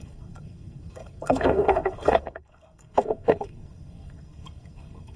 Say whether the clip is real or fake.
fake